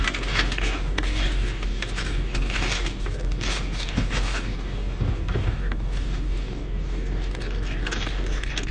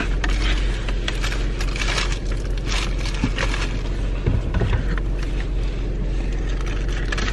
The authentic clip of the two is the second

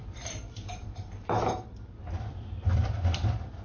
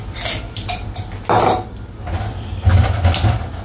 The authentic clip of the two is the second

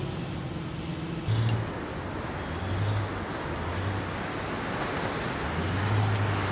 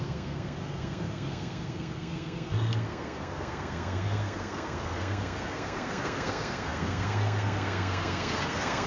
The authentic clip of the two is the first